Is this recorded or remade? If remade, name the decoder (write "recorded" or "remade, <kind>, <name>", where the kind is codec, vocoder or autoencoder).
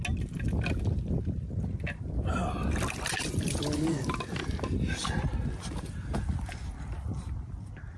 recorded